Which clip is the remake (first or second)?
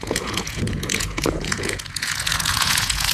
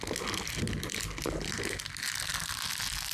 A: first